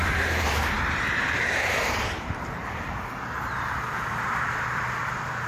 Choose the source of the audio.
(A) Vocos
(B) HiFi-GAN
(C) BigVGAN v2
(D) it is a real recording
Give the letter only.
C